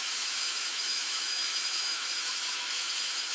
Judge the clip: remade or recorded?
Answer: remade